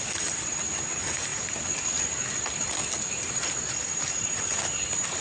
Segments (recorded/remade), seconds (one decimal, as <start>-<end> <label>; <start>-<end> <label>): 0.0-5.2 recorded